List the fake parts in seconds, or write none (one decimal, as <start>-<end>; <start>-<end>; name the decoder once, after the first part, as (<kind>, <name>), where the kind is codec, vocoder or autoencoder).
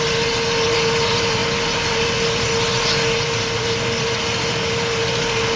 none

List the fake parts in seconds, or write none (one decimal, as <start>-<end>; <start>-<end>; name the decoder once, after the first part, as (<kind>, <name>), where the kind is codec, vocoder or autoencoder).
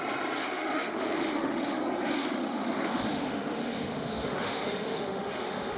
0.4-1.8 (autoencoder, DAC-VAE); 2.2-5.8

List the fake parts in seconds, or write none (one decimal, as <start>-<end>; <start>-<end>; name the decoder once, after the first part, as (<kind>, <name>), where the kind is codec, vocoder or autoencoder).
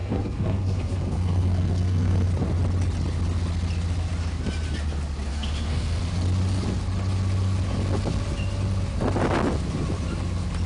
0.0-2.3 (codec, SNAC); 5.3-6.0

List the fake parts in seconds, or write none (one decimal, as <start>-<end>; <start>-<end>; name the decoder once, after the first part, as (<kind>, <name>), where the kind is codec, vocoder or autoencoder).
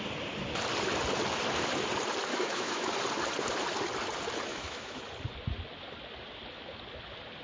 2.3-2.9 (autoencoder, DAC-VAE); 4.5-5.0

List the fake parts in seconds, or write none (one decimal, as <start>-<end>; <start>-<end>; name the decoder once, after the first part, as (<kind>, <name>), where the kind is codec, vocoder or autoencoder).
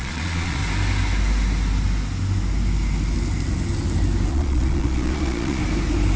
0.0-0.6 (vocoder, Vocos); 4.3-5.6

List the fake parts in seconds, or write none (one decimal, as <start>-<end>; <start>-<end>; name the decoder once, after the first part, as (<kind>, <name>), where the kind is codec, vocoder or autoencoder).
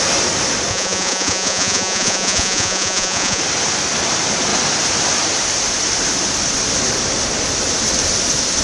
0.7-3.4 (vocoder, Vocos)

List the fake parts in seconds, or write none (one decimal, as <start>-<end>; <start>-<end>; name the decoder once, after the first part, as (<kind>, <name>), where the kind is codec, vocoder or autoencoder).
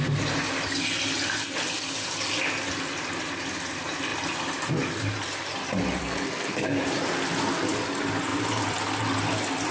6.0-6.8 (codec, SNAC)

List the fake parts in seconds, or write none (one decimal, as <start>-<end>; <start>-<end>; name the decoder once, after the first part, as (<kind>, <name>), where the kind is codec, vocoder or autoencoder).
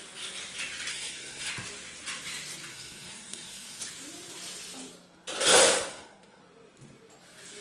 0.9-1.5 (codec, SNAC); 2.7-3.8; 5.9-6.4